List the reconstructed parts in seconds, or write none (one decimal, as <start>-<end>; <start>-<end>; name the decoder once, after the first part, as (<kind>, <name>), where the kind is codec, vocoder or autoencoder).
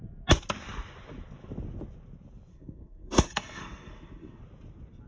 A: 2.5-4.4 (codec, SNAC)